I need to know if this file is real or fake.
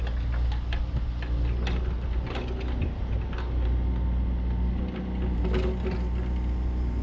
real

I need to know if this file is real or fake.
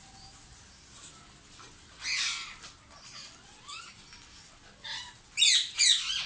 real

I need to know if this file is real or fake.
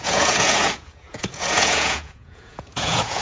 fake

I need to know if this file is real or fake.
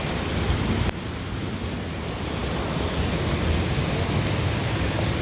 real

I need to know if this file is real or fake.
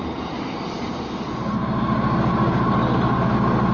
real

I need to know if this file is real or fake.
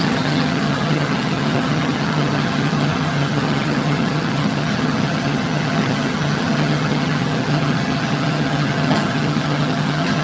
fake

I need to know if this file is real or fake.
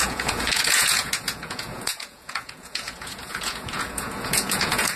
fake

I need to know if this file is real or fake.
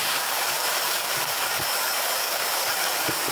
fake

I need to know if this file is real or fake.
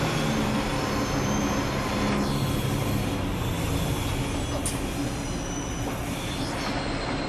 real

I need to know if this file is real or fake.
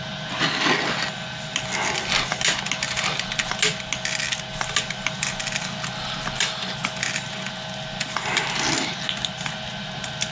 real